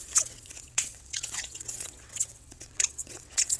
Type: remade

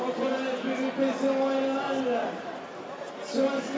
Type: recorded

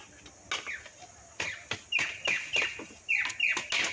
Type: recorded